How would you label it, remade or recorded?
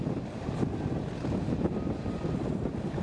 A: recorded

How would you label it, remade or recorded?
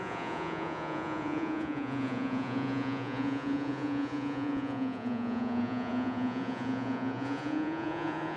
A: remade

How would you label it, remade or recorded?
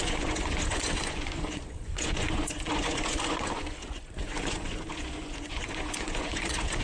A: remade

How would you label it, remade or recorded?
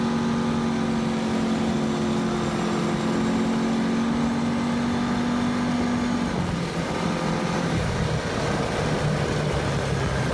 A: recorded